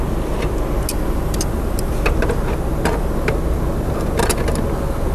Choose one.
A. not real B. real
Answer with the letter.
B